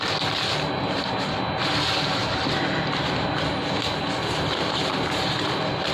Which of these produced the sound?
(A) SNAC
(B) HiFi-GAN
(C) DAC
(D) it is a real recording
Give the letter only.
D